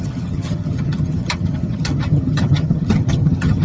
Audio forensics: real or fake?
fake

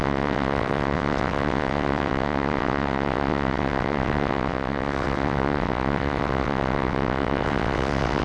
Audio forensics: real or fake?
fake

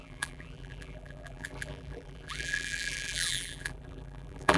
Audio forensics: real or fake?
fake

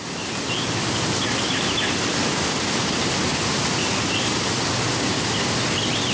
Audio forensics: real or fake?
real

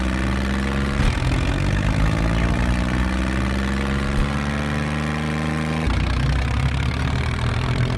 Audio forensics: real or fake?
real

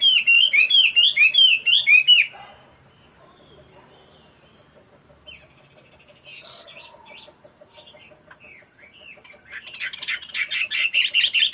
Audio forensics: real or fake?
fake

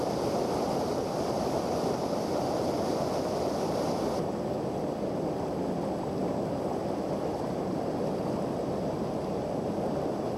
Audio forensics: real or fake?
real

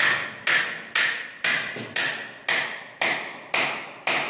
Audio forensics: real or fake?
real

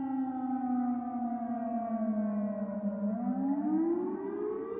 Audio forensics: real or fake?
real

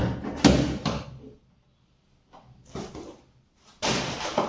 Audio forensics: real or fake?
real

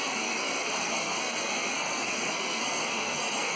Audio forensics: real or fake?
fake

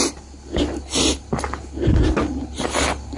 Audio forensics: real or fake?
real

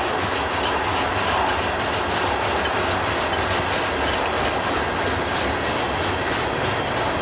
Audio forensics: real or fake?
real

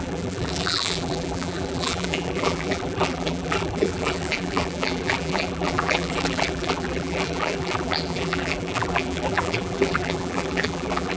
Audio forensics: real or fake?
fake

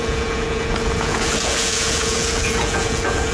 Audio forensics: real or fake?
fake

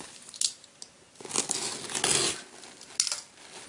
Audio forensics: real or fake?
real